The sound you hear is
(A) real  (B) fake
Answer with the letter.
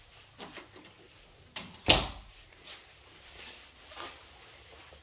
A